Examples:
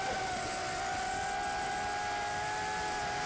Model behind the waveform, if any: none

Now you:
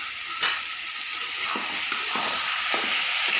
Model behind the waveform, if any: none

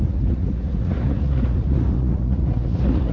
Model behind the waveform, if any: vocoder, Vocos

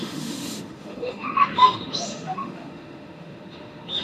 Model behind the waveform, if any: autoencoder, DAC-VAE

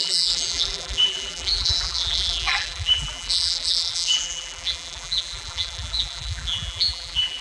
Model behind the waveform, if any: vocoder, BigVGAN v2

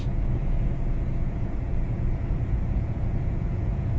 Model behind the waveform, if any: vocoder, Vocos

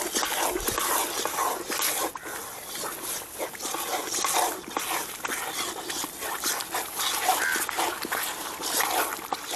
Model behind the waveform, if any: none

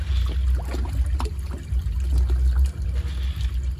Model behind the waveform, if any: none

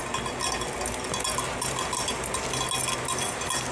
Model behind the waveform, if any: none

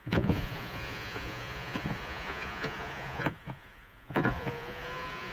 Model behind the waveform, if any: vocoder, Vocos